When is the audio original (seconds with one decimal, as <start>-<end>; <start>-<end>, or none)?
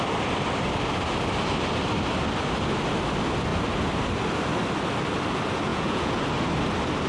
0.0-5.7; 6.2-7.1